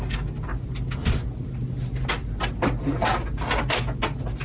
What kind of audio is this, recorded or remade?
recorded